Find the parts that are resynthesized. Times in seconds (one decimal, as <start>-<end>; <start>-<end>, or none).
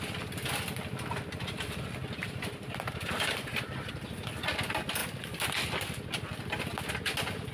2.2-4.0